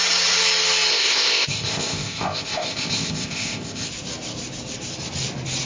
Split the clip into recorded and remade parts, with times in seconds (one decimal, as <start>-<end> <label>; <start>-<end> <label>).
0.0-0.9 recorded; 0.9-3.9 remade; 3.9-5.7 recorded